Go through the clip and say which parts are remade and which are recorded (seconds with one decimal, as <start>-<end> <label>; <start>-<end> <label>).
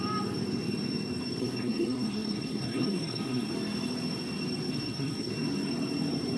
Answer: 0.0-1.4 recorded; 1.4-3.5 remade; 3.5-4.7 recorded; 4.7-5.3 remade; 5.3-6.4 recorded